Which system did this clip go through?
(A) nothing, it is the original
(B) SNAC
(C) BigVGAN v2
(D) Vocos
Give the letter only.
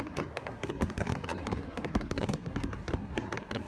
B